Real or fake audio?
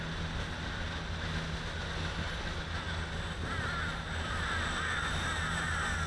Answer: real